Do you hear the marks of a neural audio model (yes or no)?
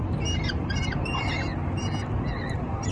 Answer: no